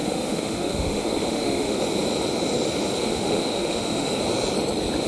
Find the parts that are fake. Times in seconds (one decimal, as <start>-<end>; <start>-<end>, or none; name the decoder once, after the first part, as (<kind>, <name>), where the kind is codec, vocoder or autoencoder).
0.0-1.8 (autoencoder, DAC-VAE); 3.0-4.2